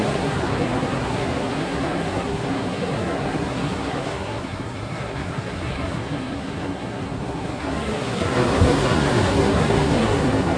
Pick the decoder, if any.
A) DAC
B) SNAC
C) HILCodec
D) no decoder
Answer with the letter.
B